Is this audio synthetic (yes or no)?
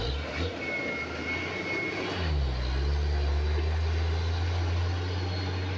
no